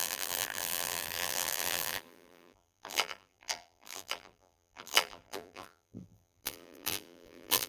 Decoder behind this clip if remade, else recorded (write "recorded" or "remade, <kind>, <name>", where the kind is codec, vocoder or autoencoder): remade, vocoder, BigVGAN v2